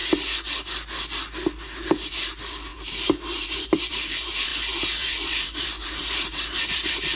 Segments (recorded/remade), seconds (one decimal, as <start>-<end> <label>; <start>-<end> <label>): 0.0-2.1 recorded; 2.1-7.2 remade